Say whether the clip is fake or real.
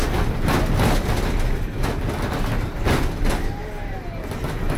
real